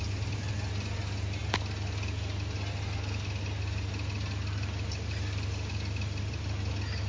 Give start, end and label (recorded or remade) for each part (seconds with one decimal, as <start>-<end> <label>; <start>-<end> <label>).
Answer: 0.0-7.1 recorded